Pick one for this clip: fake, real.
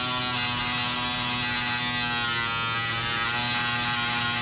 real